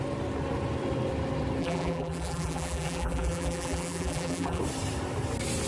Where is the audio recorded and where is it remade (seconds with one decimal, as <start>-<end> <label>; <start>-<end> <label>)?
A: 0.0-1.6 recorded; 1.6-4.6 remade; 4.6-5.7 recorded